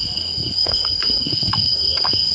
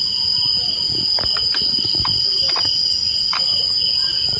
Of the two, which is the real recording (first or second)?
second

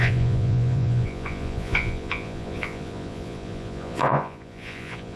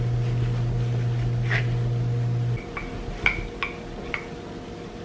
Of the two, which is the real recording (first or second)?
second